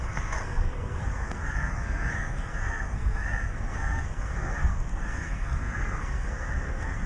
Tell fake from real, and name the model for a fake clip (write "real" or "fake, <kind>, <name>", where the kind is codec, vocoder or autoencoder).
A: fake, codec, SNAC